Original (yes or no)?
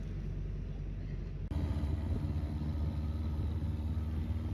yes